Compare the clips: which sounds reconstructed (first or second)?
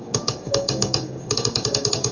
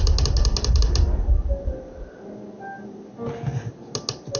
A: first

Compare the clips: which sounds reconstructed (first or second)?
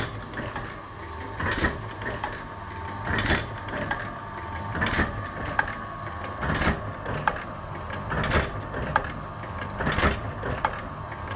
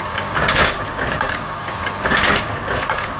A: second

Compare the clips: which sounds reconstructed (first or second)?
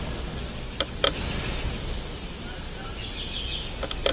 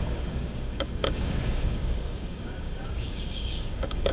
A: second